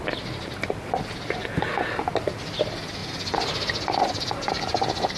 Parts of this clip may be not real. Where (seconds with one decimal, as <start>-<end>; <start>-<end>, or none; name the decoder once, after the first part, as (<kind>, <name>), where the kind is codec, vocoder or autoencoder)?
none